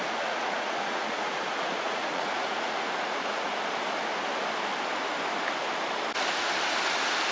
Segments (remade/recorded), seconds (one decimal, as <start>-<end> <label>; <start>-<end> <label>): 0.0-3.5 remade; 3.5-7.3 recorded